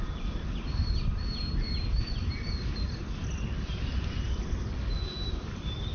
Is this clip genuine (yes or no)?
yes